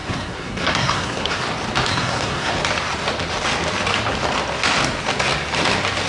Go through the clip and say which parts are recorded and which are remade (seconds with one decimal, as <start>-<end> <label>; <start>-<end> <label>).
0.0-1.4 remade; 1.4-1.9 recorded; 1.9-2.5 remade; 2.5-6.1 recorded